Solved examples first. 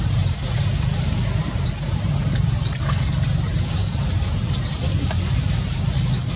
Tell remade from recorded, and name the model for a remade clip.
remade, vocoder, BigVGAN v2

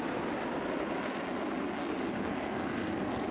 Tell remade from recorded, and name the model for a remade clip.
recorded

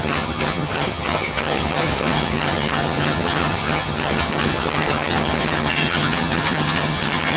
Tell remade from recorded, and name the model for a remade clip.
remade, vocoder, HiFi-GAN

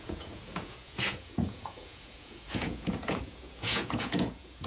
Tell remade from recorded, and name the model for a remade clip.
remade, vocoder, Vocos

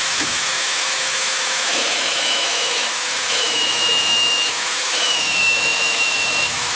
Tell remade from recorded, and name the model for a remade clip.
remade, autoencoder, DAC-VAE